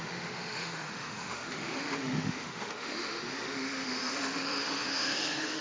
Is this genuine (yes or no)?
no